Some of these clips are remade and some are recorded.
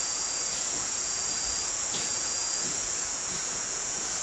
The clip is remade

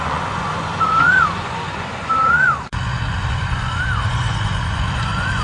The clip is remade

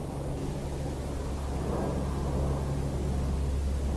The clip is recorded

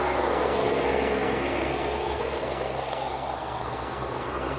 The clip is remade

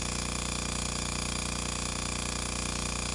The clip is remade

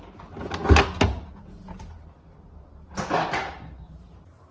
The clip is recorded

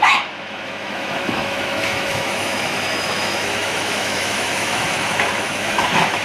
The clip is remade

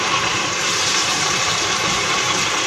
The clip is remade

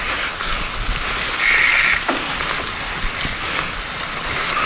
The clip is recorded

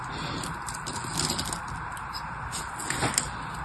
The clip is recorded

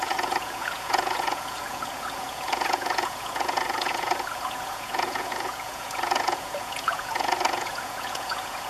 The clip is remade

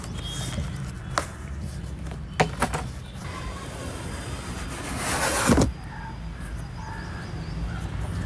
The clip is recorded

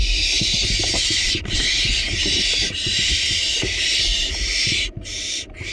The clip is remade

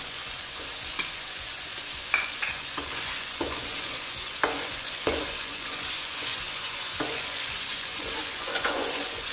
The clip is remade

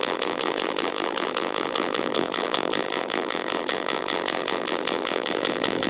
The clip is remade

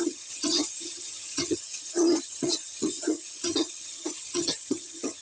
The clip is remade